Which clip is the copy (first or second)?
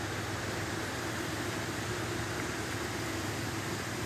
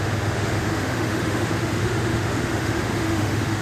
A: second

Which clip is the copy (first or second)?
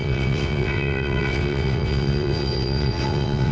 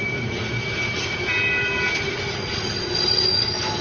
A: first